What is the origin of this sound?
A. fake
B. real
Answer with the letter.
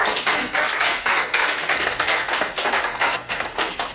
A